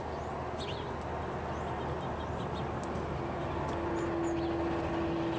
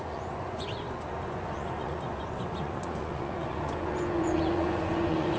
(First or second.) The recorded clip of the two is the first